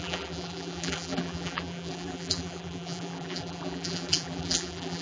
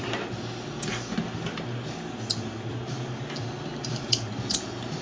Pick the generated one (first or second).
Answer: first